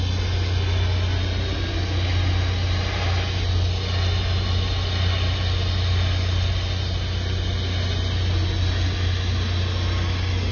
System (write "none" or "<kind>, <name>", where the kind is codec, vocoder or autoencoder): none